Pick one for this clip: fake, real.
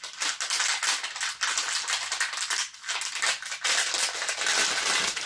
real